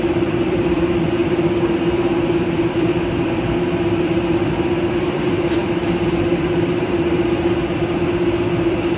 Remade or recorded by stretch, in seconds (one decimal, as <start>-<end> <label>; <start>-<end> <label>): 0.0-9.0 remade